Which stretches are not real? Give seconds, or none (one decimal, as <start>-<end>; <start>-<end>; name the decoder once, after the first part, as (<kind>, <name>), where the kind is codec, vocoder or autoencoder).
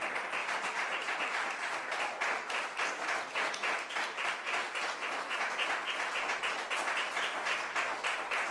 0.4-1.3 (vocoder, BigVGAN v2)